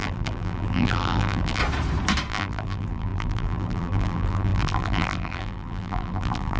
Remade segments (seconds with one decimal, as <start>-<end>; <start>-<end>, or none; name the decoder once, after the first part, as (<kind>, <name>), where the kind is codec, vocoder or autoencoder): 0.0-1.6 (vocoder, BigVGAN v2); 2.3-6.6